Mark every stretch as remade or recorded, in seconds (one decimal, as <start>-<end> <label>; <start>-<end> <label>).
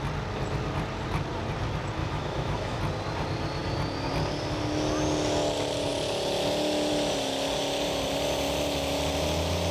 0.0-2.0 recorded; 2.0-2.8 remade; 2.8-9.7 recorded